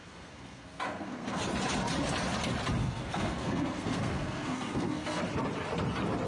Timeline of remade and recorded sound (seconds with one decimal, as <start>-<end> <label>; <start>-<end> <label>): 0.0-1.4 remade; 1.4-2.8 recorded; 2.8-5.2 remade; 5.2-6.3 recorded